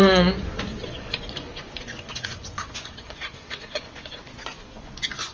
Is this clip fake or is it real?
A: fake